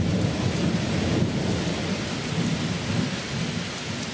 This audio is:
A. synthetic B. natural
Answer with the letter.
A